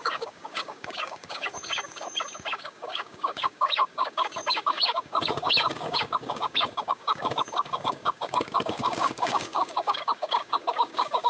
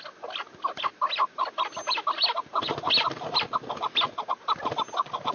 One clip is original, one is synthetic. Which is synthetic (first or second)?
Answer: first